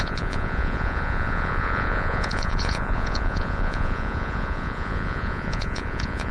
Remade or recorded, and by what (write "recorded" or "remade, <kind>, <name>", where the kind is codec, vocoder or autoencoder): remade, vocoder, Vocos